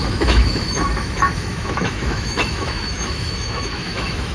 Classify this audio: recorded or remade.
remade